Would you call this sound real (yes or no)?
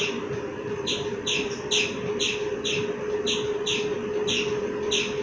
yes